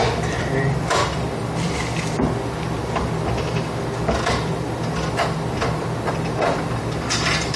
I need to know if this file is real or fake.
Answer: fake